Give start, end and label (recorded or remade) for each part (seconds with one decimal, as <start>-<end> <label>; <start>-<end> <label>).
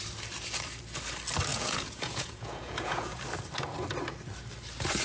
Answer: 0.0-1.5 recorded; 1.5-3.2 remade; 3.2-5.0 recorded